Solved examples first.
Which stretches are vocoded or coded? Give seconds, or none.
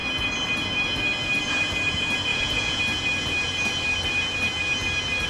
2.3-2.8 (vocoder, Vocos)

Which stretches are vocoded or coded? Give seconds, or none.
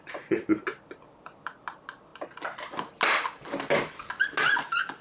none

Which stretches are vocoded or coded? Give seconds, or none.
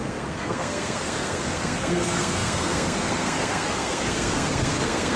0.0-5.2 (codec, SNAC)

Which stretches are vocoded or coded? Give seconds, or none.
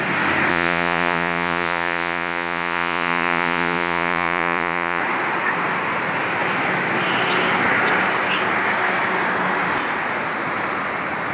0.5-5.0 (vocoder, Vocos)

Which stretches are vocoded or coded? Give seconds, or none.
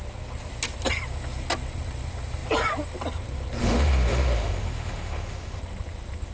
3.6-5.6 (autoencoder, DAC-VAE)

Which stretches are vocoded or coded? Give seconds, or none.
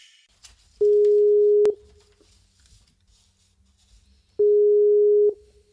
none